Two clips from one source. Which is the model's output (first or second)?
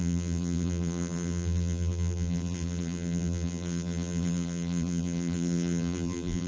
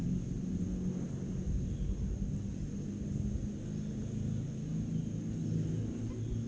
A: first